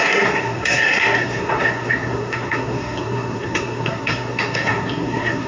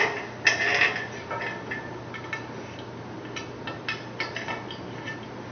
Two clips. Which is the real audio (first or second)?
second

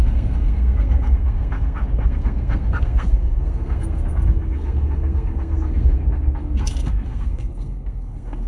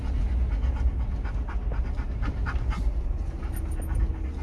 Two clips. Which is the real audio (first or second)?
second